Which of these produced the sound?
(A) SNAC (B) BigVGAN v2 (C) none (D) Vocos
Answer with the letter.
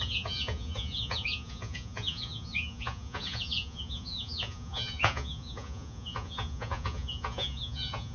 D